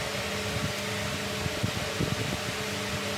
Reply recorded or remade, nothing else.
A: recorded